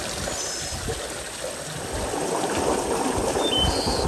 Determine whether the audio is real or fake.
real